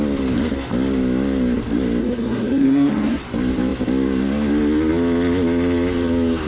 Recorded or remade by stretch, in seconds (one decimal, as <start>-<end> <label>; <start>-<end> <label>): 0.0-2.0 recorded; 2.0-3.2 remade; 3.2-6.5 recorded